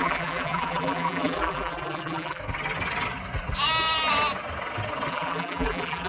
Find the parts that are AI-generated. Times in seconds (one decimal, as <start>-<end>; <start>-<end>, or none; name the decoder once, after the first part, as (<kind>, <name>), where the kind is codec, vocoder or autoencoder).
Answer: 0.0-2.4 (vocoder, BigVGAN v2); 5.1-6.1